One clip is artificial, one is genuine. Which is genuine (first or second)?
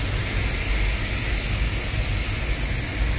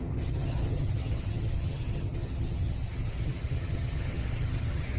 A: first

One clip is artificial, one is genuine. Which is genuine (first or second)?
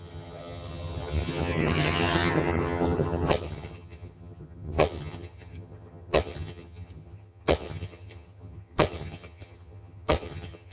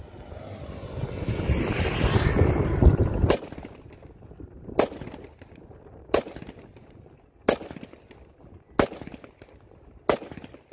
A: second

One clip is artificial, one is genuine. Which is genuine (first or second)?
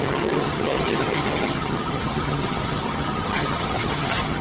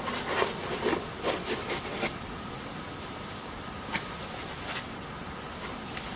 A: second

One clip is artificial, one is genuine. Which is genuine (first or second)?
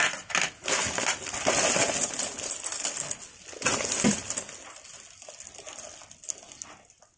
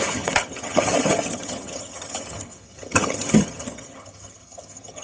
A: first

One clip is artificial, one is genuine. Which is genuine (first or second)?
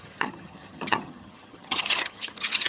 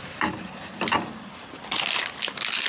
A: second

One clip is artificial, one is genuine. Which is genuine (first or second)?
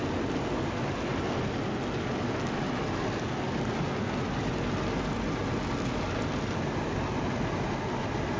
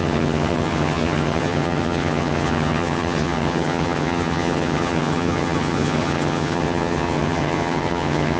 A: first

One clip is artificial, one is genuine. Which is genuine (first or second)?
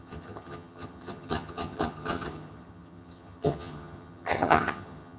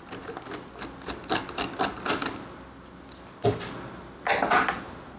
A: second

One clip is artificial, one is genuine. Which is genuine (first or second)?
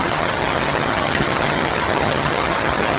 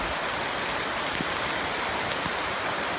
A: second